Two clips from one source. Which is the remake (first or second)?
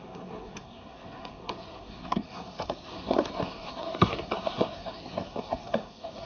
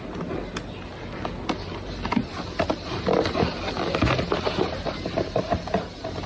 first